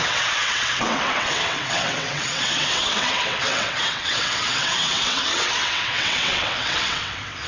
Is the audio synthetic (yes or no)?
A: yes